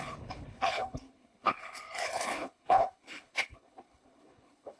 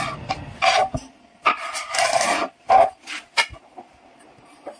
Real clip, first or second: second